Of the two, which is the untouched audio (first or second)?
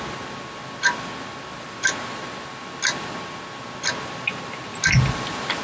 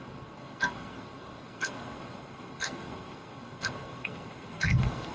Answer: first